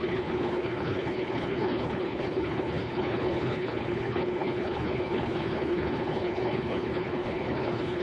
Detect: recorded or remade remade